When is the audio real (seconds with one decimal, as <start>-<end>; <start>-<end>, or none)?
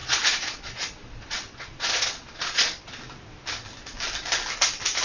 3.0-5.0